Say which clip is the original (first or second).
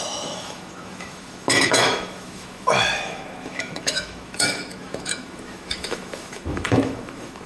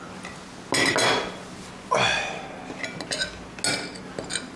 second